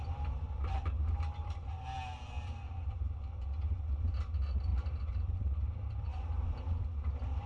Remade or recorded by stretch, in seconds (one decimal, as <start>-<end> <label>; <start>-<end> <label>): 0.0-4.7 recorded; 4.7-7.5 remade